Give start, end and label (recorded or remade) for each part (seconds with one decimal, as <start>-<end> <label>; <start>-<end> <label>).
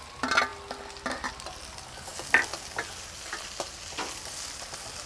0.0-5.1 recorded